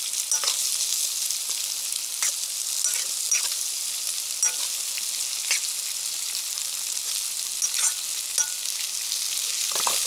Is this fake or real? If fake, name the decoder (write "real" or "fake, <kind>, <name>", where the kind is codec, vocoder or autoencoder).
real